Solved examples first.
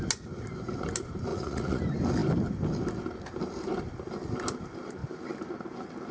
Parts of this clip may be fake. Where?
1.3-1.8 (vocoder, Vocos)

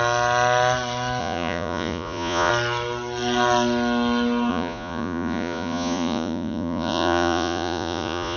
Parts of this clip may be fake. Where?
1.2-2.5 (vocoder, Vocos); 4.5-8.4

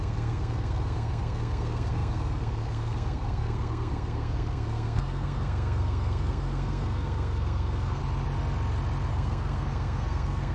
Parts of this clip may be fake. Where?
0.0-8.0 (codec, SNAC); 9.1-10.5